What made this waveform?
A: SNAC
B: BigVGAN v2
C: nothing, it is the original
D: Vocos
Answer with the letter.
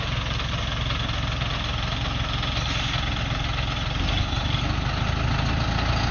C